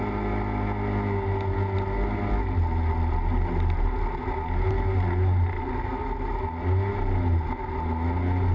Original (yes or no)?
yes